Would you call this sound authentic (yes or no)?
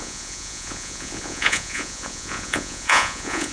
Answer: no